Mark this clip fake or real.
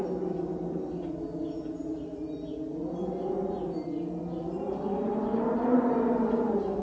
real